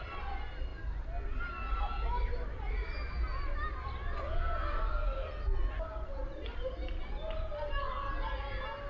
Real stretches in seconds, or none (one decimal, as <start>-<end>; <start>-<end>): 0.0-8.9